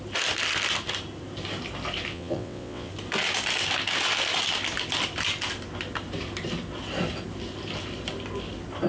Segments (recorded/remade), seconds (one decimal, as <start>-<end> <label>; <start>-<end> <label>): 0.0-2.1 recorded; 2.1-2.9 remade; 2.9-8.9 recorded